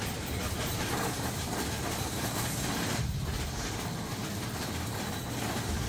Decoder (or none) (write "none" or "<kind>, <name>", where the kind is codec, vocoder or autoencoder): none